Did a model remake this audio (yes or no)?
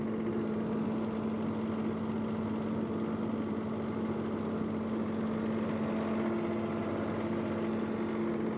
no